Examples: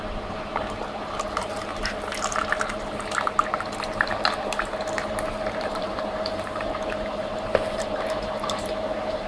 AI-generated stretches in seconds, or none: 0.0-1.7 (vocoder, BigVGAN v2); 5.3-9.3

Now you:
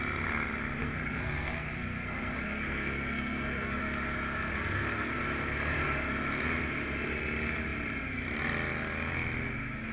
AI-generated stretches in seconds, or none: 0.8-3.8 (codec, SNAC); 4.5-5.2